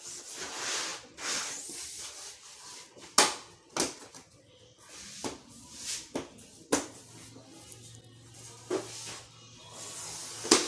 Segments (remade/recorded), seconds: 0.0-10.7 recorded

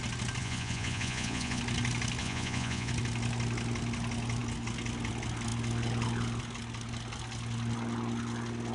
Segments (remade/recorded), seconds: 0.0-0.4 recorded; 0.4-1.6 remade; 1.6-2.2 recorded; 2.2-2.9 remade; 2.9-8.7 recorded

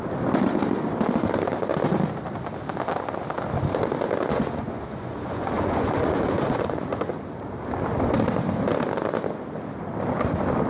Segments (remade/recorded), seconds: 0.0-4.3 recorded; 4.3-7.1 remade; 7.1-10.7 recorded

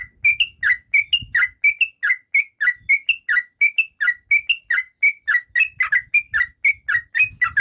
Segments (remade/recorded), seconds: 0.0-7.6 recorded